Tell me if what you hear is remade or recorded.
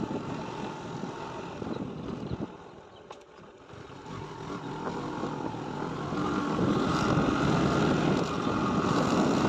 recorded